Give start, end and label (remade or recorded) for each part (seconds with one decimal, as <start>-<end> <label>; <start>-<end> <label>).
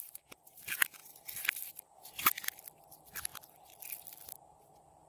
0.0-5.1 recorded